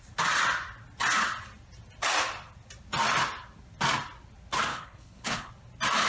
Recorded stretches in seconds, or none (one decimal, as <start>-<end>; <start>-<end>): 0.0-4.7; 5.5-6.1